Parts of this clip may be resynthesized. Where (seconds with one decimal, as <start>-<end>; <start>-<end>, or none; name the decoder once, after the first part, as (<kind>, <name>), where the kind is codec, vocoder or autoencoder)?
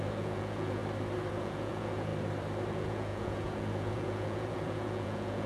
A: 0.0-0.8 (vocoder, Vocos); 1.3-2.1; 2.7-5.5